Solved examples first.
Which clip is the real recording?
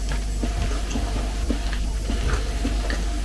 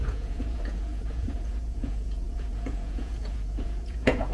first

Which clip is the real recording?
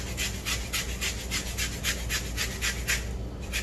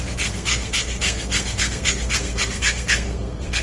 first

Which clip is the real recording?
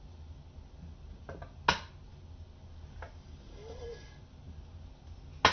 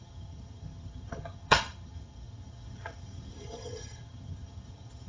first